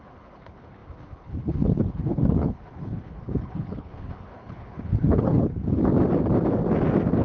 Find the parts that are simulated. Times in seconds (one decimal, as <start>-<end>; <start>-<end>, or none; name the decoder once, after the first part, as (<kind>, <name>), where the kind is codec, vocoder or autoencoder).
0.0-5.8 (codec, HILCodec)